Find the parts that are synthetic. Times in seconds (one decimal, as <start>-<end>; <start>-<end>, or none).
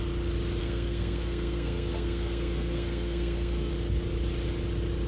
0.6-3.7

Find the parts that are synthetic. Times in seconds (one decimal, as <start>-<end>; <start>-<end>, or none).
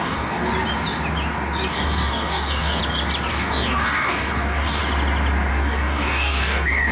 0.0-0.5; 1.7-2.8; 3.3-4.8; 5.5-6.9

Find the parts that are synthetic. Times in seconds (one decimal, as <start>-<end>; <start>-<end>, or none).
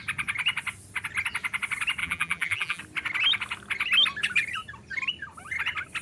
2.0-2.8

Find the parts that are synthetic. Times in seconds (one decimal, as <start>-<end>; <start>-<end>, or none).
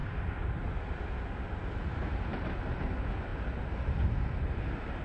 none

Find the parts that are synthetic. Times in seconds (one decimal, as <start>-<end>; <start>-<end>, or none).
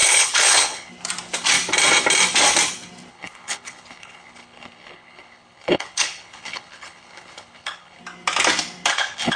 0.0-0.9; 3.1-8.0; 8.9-9.4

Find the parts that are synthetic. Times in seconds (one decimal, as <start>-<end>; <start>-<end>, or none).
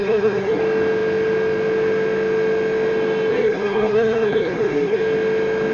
0.0-0.6; 3.3-5.0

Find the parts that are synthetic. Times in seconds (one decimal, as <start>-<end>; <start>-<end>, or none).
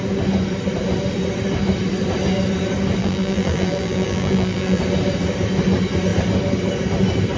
3.0-4.8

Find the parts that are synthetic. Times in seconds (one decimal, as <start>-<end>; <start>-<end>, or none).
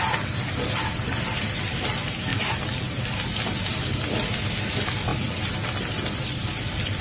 0.0-2.3; 3.1-7.0